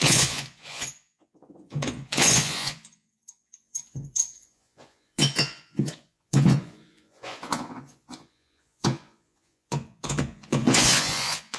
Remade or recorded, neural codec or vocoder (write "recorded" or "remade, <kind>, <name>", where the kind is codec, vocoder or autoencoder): remade, vocoder, Vocos